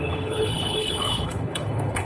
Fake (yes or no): yes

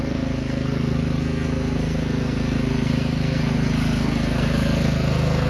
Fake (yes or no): yes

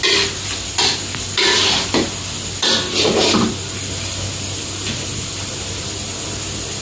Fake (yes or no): no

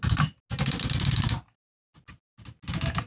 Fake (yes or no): no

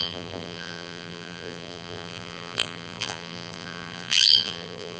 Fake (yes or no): yes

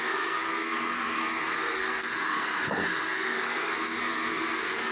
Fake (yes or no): yes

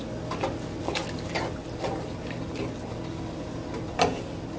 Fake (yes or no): no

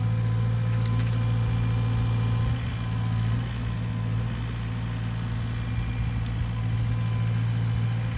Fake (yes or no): no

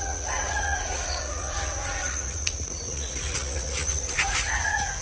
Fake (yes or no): yes